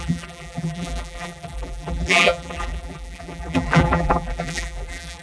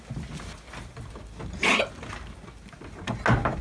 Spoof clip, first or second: first